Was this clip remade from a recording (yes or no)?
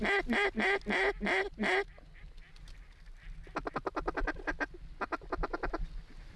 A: no